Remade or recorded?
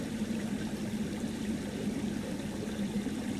recorded